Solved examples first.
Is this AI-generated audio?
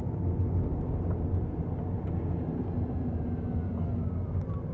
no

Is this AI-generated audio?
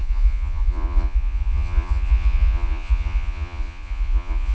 yes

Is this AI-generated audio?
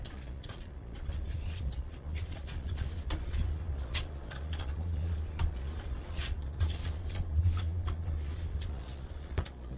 yes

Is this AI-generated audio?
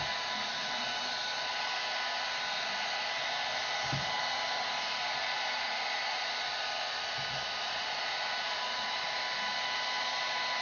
no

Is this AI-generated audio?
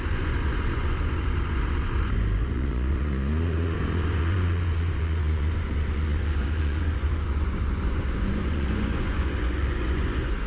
yes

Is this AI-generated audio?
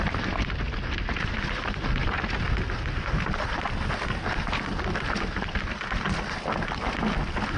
no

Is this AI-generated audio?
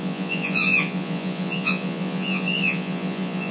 yes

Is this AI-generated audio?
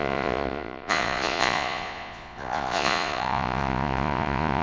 yes